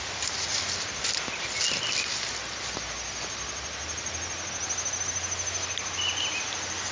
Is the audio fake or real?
real